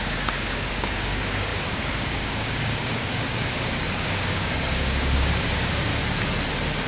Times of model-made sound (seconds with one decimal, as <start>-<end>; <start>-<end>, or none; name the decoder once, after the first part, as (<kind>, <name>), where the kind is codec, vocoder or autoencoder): 0.0-5.9 (codec, DAC)